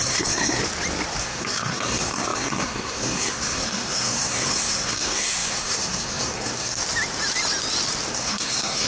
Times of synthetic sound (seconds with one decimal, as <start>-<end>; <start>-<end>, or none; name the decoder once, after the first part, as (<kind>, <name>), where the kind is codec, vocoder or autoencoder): 0.0-0.6 (codec, SNAC); 1.2-6.8; 8.1-8.9